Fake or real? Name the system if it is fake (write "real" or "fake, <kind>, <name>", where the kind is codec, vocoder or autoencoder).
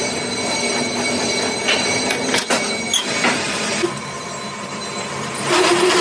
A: real